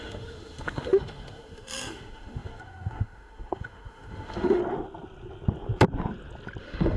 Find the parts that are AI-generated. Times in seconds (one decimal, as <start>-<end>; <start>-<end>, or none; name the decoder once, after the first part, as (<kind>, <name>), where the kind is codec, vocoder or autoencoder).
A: 0.0-4.6 (autoencoder, DAC-VAE); 6.6-7.0